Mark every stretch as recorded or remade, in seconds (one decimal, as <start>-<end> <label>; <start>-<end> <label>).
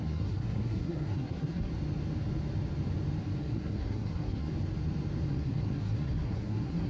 0.0-1.7 remade; 1.7-3.4 recorded; 3.4-4.5 remade; 4.5-5.3 recorded; 5.3-6.9 remade